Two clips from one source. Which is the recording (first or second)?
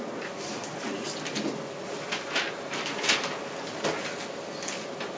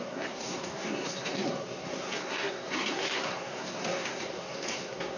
first